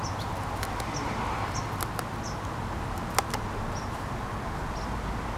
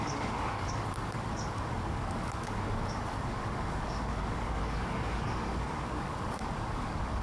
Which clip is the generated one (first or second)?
second